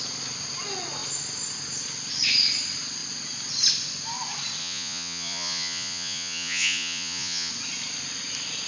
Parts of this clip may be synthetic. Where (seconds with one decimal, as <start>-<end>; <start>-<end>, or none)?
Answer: 4.6-7.5